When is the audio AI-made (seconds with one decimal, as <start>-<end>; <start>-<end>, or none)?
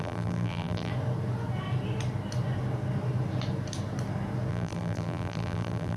0.0-0.9; 4.5-6.0